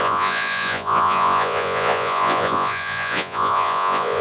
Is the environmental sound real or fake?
fake